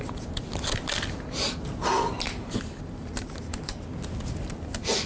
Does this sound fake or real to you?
real